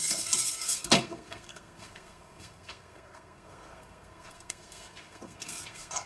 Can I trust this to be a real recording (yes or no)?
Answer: no